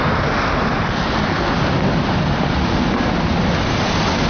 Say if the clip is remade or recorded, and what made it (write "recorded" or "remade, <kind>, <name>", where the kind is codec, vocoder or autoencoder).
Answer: recorded